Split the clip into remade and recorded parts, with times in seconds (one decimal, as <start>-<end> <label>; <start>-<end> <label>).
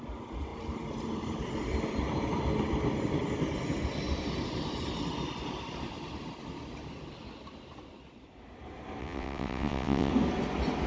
0.0-9.0 recorded; 9.0-10.1 remade; 10.1-10.9 recorded